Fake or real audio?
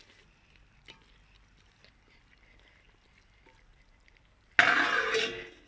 real